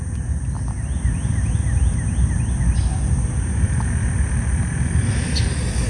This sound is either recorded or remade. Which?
recorded